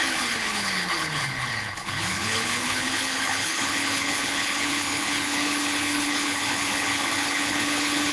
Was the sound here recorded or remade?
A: remade